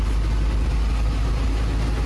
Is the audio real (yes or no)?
yes